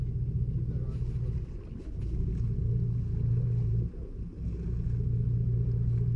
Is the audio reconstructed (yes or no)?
no